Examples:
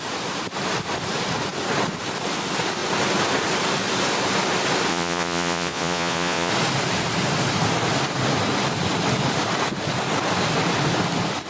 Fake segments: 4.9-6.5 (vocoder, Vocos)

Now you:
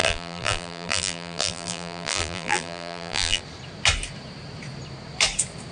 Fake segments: 0.0-3.4 (vocoder, BigVGAN v2)